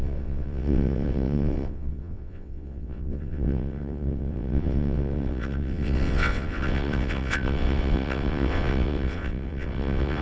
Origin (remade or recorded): remade